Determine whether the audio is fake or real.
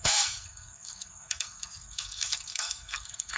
fake